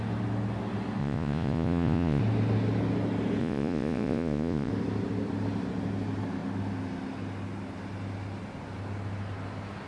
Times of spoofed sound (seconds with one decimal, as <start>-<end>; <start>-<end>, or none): 1.0-2.2; 3.4-4.7

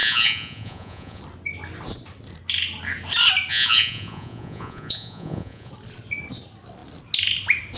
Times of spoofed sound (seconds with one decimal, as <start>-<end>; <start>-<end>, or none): 0.0-1.2; 3.5-5.7

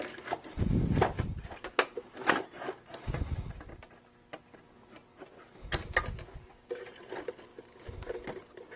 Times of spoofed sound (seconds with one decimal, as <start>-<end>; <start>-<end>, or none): none

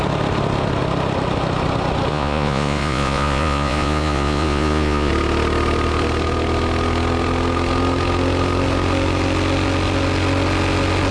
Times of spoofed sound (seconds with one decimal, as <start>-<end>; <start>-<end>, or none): 2.1-5.1

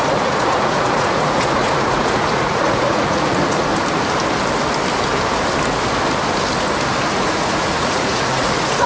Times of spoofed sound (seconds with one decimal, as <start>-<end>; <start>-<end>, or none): 0.0-3.7; 7.1-8.9